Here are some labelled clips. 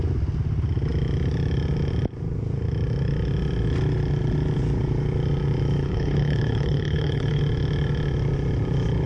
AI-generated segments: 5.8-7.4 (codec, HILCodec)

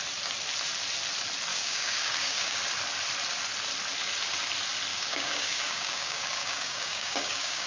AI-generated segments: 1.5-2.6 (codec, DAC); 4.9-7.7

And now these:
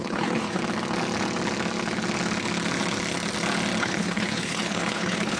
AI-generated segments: 0.0-0.6 (codec, HILCodec); 3.8-5.4

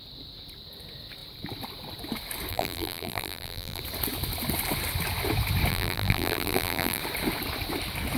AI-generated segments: 2.5-3.8 (vocoder, BigVGAN v2); 5.7-7.0

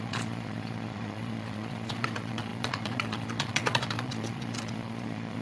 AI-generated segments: 0.0-5.4 (vocoder, Vocos)

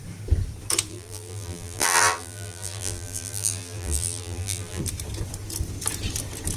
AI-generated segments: 0.9-4.8 (vocoder, BigVGAN v2)

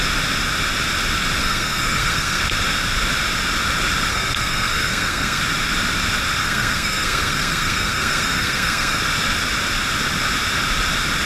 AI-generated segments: 1.4-2.4 (codec, SNAC); 4.1-5.4; 6.4-9.0

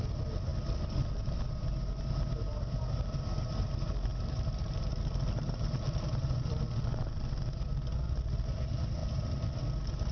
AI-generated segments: 4.1-6.3 (vocoder, BigVGAN v2)